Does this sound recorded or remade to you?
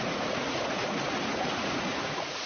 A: remade